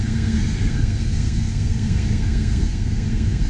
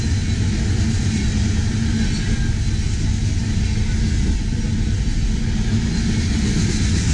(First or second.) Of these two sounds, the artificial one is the first